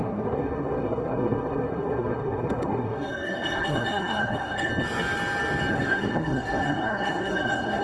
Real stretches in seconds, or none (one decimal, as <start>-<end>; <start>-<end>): 4.7-5.7